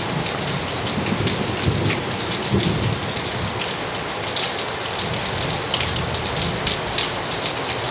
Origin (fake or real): real